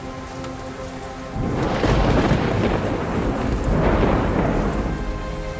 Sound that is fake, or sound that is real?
real